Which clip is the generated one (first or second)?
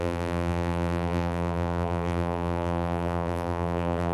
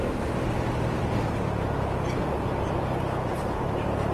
first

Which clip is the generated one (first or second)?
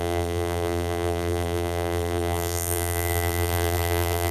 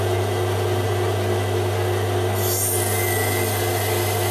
first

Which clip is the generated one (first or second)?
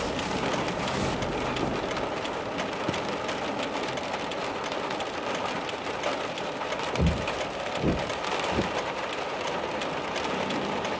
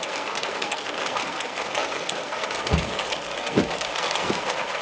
second